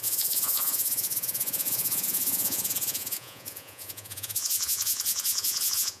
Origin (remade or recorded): remade